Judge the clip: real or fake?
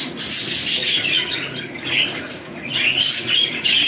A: fake